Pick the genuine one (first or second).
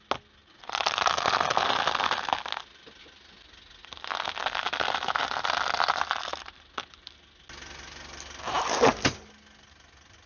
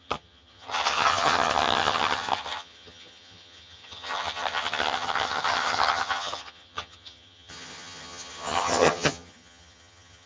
first